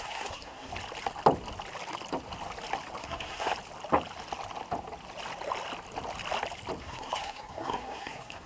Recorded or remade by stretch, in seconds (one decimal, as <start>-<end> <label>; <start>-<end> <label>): 0.0-0.7 remade; 0.7-3.0 recorded; 3.0-3.5 remade; 3.5-6.8 recorded; 6.8-8.5 remade